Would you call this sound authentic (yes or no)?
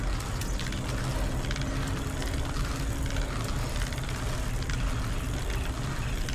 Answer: yes